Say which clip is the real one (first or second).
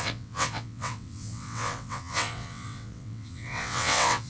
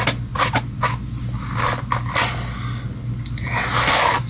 second